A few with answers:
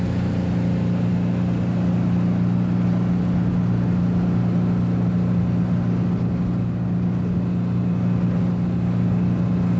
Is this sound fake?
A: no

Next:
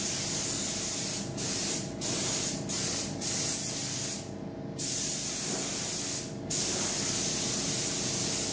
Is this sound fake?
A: no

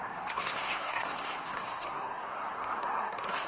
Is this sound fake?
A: yes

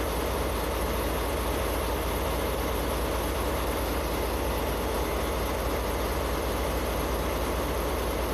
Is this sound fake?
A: no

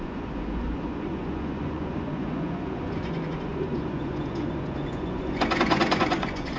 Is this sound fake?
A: yes